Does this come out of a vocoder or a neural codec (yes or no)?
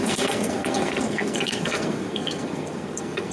yes